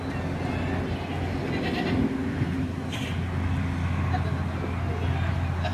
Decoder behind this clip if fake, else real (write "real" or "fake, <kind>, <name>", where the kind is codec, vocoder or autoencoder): real